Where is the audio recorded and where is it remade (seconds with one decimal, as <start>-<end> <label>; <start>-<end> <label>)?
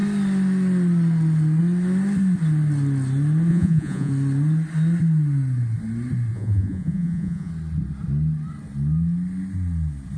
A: 0.0-3.5 recorded; 3.5-4.1 remade; 4.1-6.3 recorded; 6.3-7.5 remade; 7.5-10.2 recorded